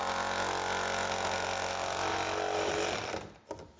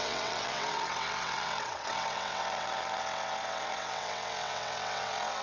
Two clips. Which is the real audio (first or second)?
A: first